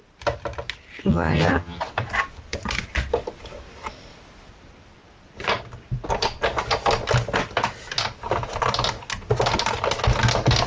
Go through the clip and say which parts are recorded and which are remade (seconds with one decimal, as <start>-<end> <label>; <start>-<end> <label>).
0.0-1.1 recorded; 1.1-1.8 remade; 1.8-10.7 recorded